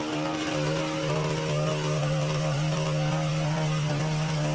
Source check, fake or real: real